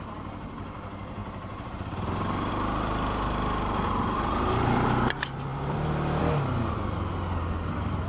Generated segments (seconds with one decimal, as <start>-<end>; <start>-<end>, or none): 1.2-2.5